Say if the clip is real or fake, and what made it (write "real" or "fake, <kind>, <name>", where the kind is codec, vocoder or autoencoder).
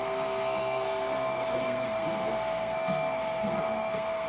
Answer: fake, codec, SNAC